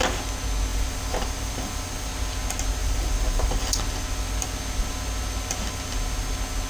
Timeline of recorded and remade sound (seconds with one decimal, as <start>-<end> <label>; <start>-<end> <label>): 0.0-0.7 recorded; 0.7-2.1 remade; 2.1-2.8 recorded; 2.8-3.8 remade; 3.8-6.7 recorded